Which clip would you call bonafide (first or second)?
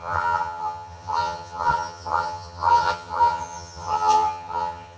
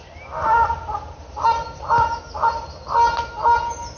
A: second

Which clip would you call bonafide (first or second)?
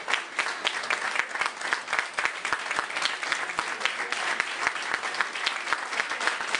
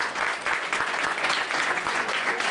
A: first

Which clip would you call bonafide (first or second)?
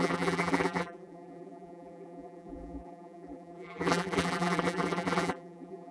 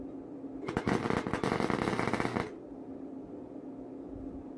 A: second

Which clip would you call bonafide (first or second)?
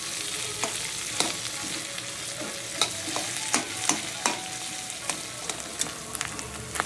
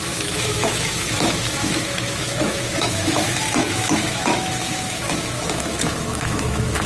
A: first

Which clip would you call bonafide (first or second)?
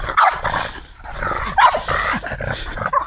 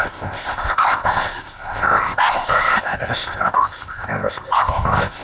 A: first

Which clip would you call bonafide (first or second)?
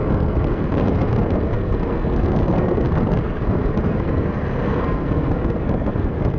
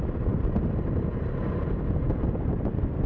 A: second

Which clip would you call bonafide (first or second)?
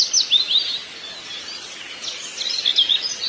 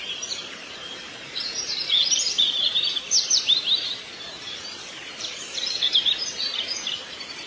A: first